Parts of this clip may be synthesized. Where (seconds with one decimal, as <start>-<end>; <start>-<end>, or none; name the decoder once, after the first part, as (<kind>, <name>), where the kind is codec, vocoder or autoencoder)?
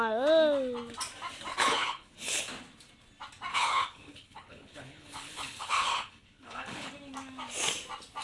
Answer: 1.5-2.4 (codec, HILCodec); 3.5-6.9